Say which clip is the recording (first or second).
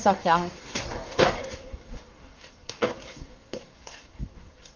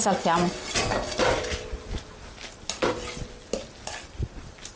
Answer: second